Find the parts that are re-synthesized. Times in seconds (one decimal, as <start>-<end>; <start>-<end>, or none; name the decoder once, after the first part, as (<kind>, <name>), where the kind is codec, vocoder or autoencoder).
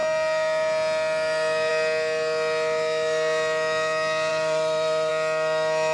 4.3-5.1 (vocoder, BigVGAN v2)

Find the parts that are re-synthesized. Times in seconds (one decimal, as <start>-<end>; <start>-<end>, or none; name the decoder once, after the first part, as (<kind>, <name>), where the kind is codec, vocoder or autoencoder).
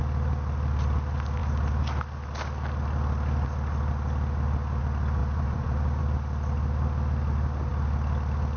5.2-6.0 (vocoder, BigVGAN v2)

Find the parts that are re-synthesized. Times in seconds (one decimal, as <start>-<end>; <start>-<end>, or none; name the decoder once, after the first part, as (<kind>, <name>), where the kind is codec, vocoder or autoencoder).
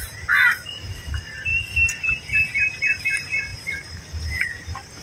none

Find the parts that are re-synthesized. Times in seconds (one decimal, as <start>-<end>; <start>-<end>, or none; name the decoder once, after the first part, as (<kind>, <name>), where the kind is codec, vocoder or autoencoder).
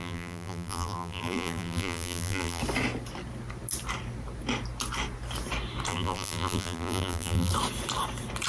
0.0-2.6 (vocoder, BigVGAN v2); 5.9-7.5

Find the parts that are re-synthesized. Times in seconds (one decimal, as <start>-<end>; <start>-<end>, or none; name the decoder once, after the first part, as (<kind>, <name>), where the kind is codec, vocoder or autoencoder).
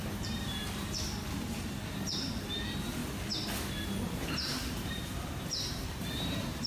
0.0-3.0 (vocoder, BigVGAN v2); 3.8-6.7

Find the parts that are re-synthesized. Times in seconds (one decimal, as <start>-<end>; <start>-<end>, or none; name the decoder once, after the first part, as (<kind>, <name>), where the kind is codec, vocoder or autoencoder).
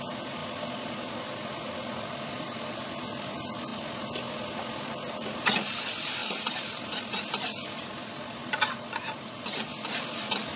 0.4-0.9 (vocoder, BigVGAN v2); 6.2-8.1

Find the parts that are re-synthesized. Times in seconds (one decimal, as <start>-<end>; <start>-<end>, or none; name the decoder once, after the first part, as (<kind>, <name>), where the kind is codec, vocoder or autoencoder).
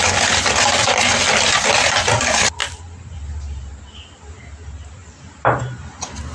5.0-5.6 (vocoder, BigVGAN v2)